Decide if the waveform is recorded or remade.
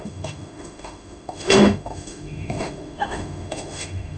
remade